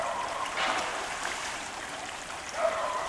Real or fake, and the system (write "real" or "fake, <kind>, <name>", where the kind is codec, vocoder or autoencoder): fake, vocoder, BigVGAN v2